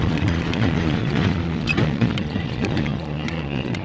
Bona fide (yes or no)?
no